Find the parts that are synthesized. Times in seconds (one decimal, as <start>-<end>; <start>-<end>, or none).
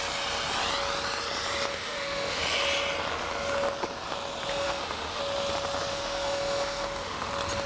1.7-2.4; 4.5-5.2; 5.9-7.3